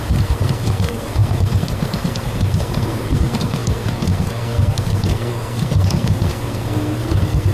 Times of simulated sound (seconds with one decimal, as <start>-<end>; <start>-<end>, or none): 0.0-7.5